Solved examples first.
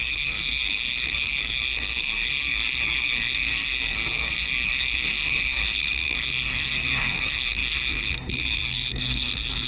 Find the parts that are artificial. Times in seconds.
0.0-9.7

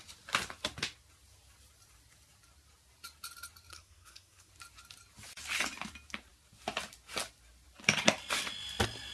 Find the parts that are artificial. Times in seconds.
3.7-4.5